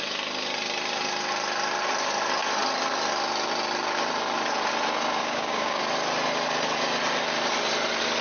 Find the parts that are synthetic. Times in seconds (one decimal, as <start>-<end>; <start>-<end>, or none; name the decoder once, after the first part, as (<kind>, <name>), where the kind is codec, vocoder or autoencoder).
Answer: 5.2-5.8 (codec, DAC)